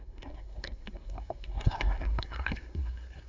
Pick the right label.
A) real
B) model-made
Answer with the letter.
B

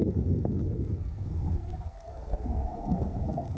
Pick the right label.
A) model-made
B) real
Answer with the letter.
A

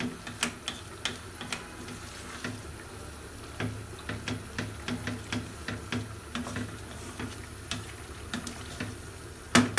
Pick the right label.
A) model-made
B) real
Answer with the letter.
B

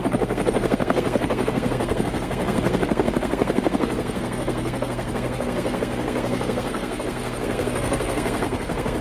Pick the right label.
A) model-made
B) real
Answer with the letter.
A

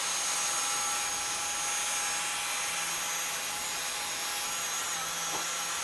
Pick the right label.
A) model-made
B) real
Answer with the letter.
B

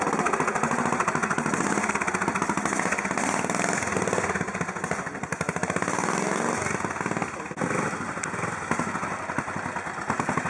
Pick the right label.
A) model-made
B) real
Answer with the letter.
B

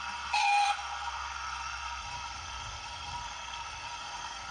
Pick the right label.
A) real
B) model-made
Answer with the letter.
B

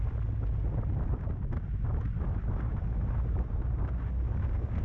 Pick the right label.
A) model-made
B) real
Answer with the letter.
B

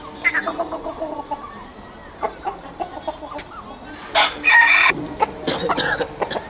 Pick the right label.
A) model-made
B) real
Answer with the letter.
B